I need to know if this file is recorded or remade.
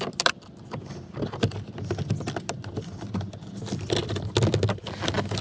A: recorded